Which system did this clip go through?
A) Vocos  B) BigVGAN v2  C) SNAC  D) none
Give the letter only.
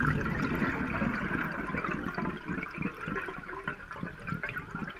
D